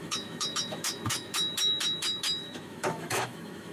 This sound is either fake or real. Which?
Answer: fake